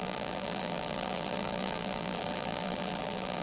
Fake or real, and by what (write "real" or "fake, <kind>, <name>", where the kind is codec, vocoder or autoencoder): fake, vocoder, BigVGAN v2